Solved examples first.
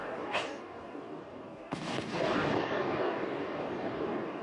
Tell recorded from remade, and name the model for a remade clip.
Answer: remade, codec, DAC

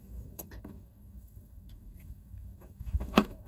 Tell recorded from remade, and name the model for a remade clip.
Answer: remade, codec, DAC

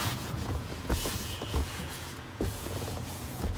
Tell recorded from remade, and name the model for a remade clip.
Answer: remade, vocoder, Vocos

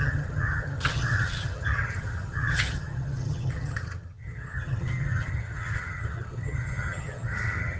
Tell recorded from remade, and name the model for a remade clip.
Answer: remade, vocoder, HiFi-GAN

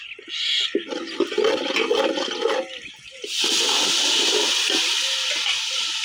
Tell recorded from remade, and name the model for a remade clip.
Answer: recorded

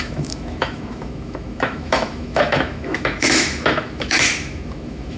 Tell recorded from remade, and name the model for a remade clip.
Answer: remade, autoencoder, DAC-VAE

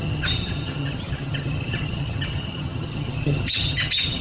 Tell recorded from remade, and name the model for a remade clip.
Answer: remade, vocoder, HiFi-GAN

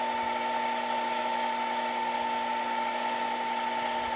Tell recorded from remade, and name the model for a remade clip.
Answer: recorded